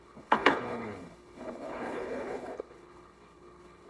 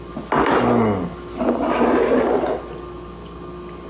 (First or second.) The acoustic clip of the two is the second